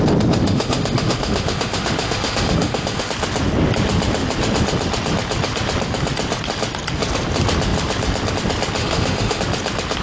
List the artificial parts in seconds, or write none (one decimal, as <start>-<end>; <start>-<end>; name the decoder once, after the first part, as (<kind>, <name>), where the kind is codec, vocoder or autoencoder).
0.4-3.1 (autoencoder, DAC-VAE); 8.8-9.4